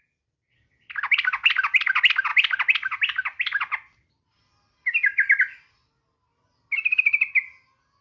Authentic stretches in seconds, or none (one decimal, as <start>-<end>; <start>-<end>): 0.0-8.0